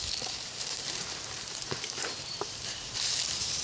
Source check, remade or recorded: remade